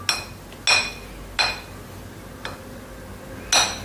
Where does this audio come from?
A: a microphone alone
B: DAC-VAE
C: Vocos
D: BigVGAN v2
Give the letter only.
A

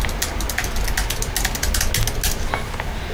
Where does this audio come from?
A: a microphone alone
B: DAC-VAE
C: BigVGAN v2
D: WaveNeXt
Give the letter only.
A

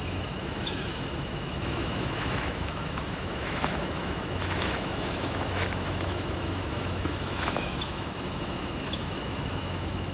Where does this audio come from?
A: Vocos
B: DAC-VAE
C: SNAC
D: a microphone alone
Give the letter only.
B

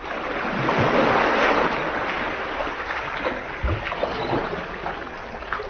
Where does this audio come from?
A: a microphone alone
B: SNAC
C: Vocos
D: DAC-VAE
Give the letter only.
A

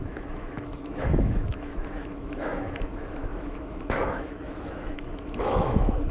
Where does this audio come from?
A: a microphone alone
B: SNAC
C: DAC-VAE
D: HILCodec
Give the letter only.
C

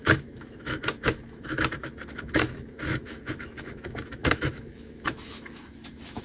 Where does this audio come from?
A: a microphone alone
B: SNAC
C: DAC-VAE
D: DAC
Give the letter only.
C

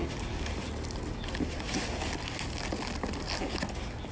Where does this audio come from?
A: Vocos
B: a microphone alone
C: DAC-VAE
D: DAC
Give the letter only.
B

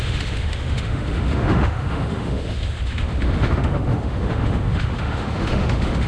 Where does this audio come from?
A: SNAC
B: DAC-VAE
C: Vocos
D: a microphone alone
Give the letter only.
B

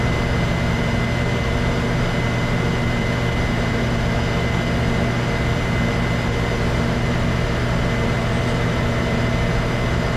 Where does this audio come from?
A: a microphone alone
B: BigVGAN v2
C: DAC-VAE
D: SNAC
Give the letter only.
A